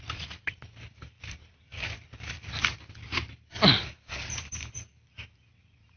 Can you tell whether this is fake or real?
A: real